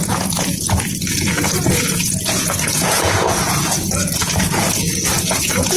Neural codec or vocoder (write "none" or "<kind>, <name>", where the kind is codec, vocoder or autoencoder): vocoder, Vocos